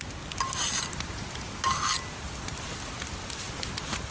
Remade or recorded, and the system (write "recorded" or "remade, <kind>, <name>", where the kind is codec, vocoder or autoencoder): recorded